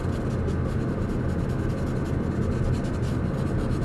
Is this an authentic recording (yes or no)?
yes